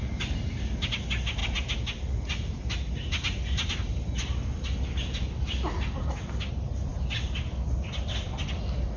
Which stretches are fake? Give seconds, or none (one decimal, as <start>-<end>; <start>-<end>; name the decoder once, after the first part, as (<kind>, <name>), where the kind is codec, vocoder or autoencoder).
none